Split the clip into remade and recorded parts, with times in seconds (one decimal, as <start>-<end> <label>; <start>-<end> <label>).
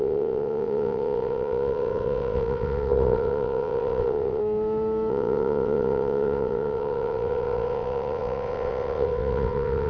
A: 0.0-4.4 remade; 4.4-5.1 recorded; 5.1-9.9 remade